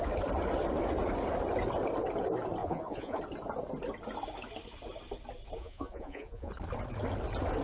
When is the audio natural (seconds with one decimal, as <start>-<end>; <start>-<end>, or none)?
0.0-2.6; 3.2-5.6; 6.5-7.6